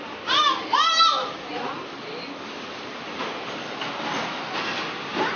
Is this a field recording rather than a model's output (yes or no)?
yes